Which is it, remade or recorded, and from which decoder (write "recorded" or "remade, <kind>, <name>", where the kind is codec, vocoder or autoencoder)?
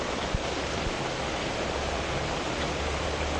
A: remade, vocoder, BigVGAN v2